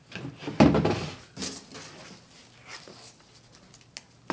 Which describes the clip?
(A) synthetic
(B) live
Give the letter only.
B